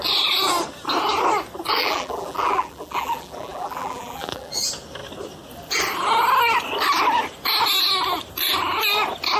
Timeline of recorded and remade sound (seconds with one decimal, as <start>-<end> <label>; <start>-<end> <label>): 0.0-1.8 recorded; 1.8-4.5 remade; 4.5-9.4 recorded